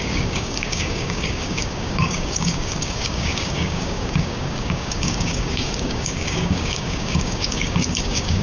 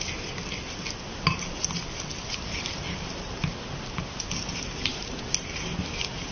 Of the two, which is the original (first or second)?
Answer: second